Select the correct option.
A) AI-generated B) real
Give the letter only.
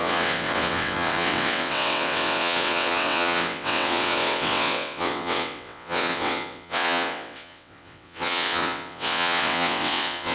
A